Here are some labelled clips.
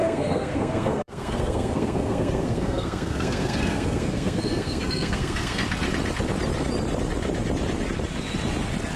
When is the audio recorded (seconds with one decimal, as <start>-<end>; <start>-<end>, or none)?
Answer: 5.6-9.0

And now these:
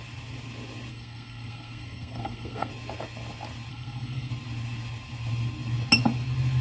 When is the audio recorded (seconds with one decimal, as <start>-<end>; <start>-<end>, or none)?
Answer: 0.0-0.9; 2.7-3.7; 4.3-6.6

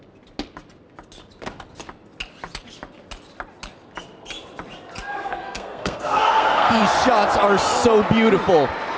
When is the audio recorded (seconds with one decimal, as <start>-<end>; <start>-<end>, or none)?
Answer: 0.0-5.1; 6.8-9.0